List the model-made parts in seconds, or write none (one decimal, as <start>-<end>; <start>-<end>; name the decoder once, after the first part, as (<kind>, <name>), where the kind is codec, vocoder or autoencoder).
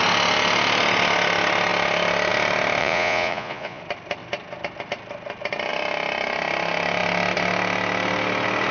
2.8-3.8 (vocoder, Vocos)